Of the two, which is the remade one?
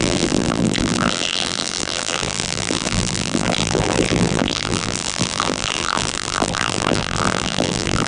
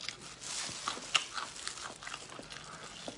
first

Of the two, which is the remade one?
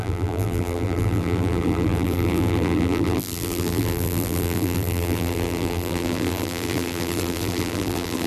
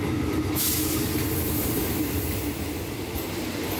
first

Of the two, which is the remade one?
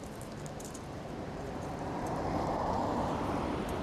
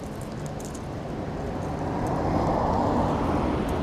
first